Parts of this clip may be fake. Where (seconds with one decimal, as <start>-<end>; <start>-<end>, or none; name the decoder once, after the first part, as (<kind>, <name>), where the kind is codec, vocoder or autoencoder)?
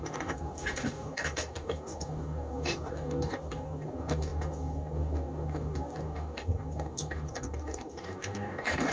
0.0-8.9 (codec, DAC)